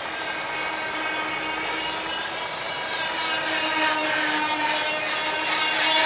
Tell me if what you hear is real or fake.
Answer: real